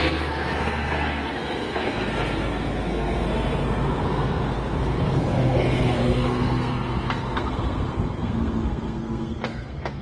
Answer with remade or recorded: remade